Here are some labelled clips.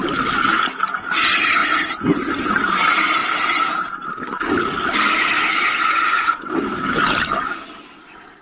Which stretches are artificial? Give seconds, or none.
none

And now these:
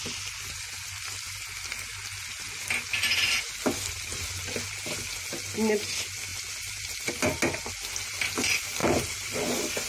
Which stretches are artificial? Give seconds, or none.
none

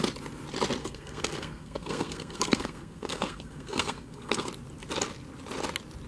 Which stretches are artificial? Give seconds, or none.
0.8-4.5 (codec, SNAC)

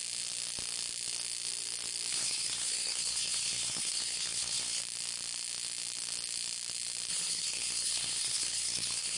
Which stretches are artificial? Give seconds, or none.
2.1-4.8 (codec, SNAC); 7.1-9.2

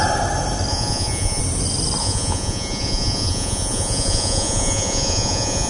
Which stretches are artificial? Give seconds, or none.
0.7-1.4 (vocoder, Vocos); 2.0-5.7

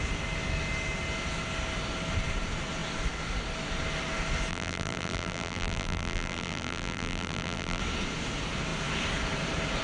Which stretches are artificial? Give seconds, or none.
4.5-7.8 (vocoder, BigVGAN v2)

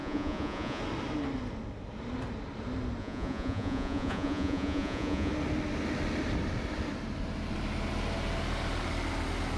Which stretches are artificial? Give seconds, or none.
0.0-0.8 (vocoder, Vocos); 3.0-5.3

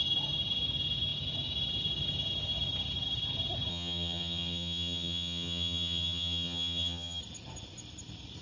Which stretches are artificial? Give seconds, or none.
3.7-7.2 (vocoder, HiFi-GAN)